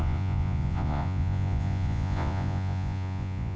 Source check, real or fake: fake